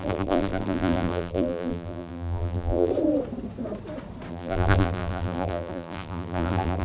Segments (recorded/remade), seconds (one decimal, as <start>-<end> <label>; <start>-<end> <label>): 0.0-2.9 remade; 2.9-4.3 recorded; 4.3-6.8 remade